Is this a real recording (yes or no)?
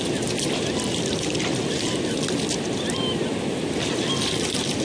yes